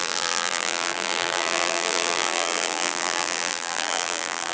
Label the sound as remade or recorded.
remade